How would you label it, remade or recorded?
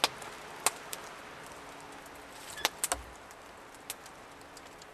recorded